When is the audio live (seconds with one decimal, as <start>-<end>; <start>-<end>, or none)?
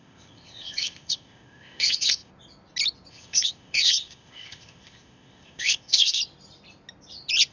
2.3-3.1; 6.2-7.5